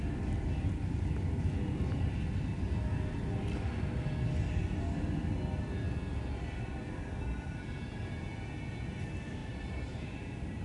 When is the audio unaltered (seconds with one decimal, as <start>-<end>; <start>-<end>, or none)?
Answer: 0.0-9.4